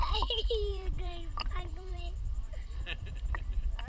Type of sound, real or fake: fake